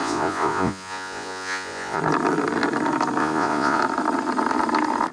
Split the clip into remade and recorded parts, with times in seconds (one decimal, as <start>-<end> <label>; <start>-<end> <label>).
0.0-2.0 remade; 2.0-3.2 recorded; 3.2-3.8 remade; 3.8-5.1 recorded